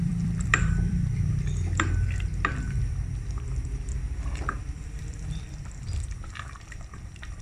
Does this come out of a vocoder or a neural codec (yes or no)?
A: yes